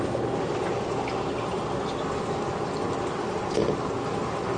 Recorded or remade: recorded